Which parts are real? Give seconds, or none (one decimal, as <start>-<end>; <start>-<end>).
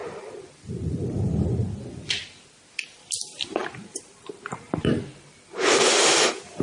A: 1.3-3.6; 6.0-6.6